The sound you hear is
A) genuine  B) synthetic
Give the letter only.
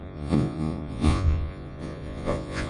B